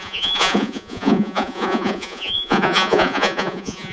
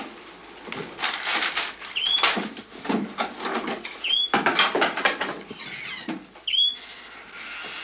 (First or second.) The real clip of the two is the second